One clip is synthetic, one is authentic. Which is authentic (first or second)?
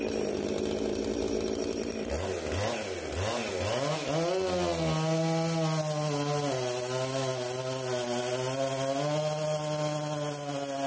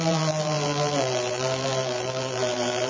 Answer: first